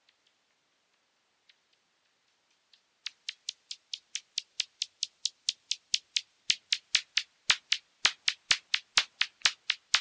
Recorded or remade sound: recorded